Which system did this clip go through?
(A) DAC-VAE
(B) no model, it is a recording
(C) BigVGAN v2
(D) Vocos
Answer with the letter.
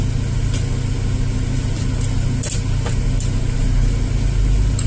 B